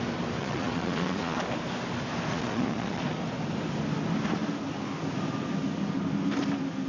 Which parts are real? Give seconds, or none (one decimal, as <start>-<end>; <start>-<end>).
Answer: 0.0-0.4; 1.4-2.3; 3.0-6.9